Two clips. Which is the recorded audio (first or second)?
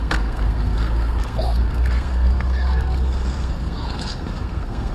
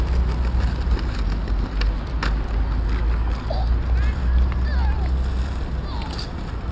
second